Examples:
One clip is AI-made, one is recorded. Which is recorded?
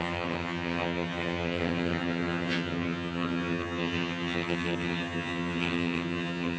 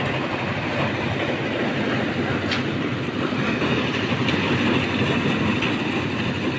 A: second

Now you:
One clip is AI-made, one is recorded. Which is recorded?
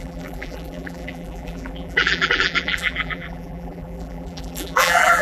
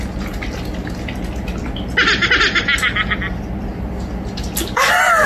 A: second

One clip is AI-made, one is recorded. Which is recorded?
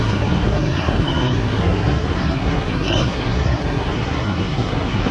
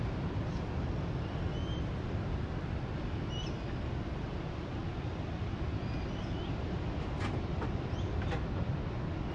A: second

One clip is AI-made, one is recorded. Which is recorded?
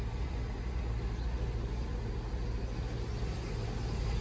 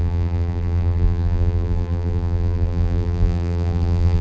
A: first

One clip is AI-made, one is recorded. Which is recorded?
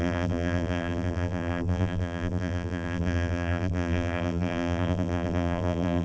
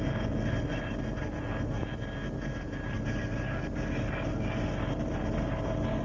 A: second